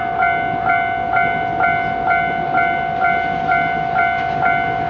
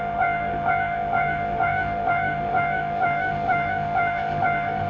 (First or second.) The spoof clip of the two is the second